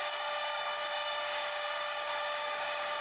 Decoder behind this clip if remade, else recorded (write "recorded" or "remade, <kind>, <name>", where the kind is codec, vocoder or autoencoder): remade, codec, DAC